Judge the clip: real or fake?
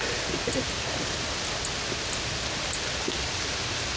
real